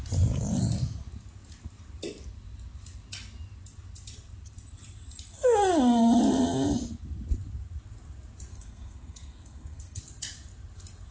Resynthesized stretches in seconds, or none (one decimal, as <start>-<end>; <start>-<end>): 8.5-10.0